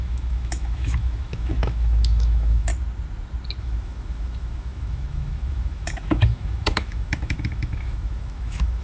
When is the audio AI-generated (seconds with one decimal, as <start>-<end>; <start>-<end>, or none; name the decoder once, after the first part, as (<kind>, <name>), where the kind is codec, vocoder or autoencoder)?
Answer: 0.0-2.7 (autoencoder, DAC-VAE); 3.6-8.8